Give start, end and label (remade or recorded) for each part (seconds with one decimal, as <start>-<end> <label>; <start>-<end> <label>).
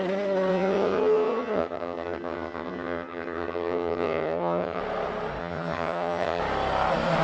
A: 0.0-0.5 recorded; 0.5-4.8 remade; 4.8-5.4 recorded; 5.4-6.4 remade; 6.4-7.2 recorded